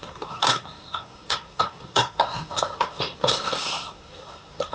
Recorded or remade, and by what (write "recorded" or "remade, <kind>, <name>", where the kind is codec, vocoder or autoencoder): remade, codec, SNAC